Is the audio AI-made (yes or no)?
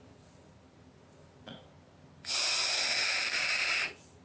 no